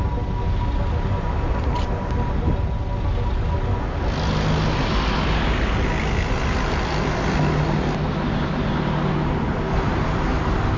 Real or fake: real